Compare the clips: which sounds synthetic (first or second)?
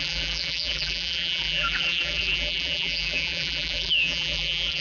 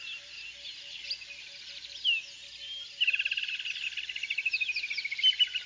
first